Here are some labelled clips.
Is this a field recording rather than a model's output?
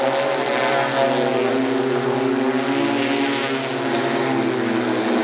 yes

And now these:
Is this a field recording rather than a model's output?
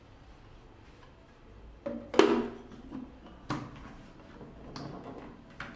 yes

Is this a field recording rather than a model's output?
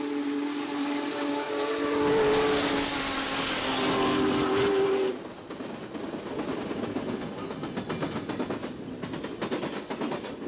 yes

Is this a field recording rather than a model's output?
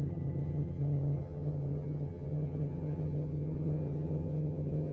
no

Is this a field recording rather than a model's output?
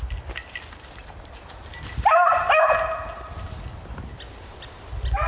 yes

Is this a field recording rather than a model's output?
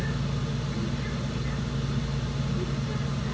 yes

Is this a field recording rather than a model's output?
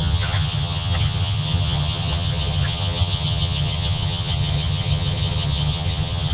no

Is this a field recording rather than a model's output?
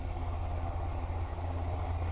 yes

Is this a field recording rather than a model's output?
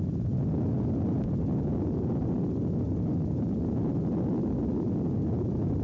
yes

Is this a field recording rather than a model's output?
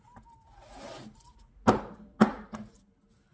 yes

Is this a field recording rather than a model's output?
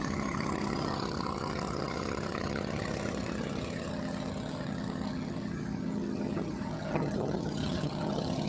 no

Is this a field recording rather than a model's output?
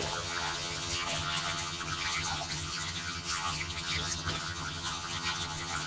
no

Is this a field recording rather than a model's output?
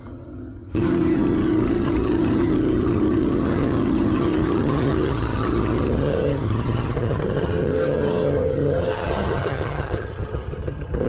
no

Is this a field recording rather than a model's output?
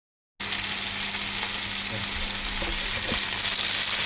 yes